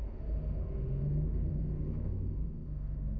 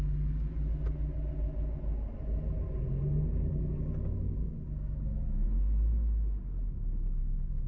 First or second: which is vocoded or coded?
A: first